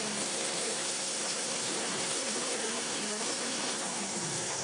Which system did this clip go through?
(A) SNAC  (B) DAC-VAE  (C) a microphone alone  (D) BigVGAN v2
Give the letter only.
A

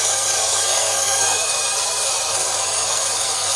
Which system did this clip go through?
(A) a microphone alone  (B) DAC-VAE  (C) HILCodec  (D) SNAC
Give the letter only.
D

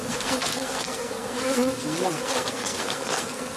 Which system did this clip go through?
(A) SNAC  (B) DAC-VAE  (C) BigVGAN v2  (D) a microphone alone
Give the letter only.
A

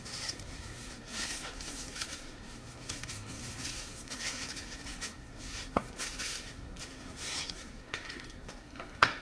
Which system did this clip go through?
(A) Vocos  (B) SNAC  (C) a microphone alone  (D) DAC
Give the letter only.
B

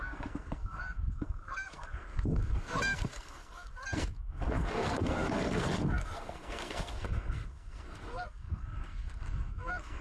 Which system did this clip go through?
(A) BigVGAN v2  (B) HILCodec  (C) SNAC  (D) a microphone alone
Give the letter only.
C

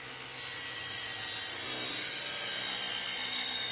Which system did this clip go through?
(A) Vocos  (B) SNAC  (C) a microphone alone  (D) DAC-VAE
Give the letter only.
C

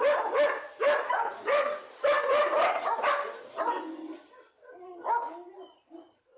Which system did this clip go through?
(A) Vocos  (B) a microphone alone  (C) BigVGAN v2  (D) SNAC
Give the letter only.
B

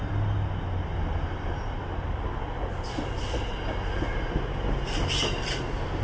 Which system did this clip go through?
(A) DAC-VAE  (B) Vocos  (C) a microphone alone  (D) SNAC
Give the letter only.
C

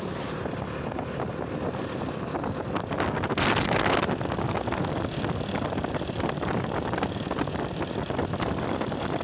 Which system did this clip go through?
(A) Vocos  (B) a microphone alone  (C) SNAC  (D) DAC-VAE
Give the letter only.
B